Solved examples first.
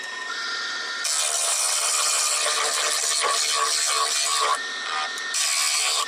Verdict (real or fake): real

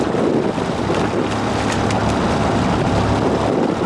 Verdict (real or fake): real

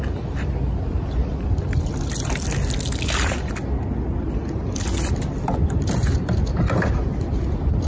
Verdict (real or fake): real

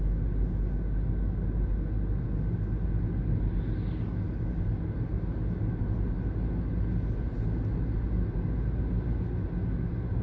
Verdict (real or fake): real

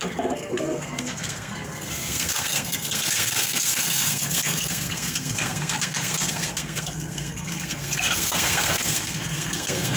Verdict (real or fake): fake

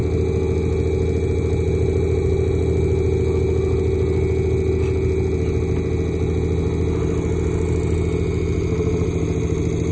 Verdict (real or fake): real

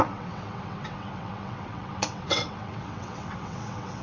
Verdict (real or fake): fake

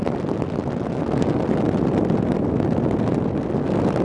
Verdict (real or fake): real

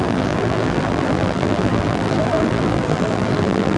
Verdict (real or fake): fake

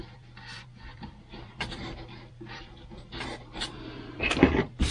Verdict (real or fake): fake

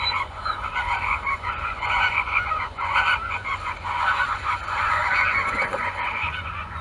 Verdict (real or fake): fake